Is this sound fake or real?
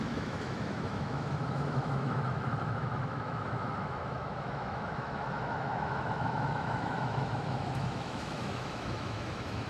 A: fake